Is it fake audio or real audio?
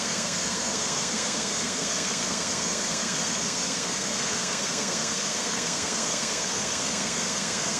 fake